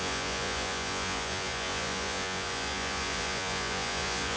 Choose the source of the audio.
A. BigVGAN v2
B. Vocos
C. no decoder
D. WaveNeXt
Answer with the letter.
B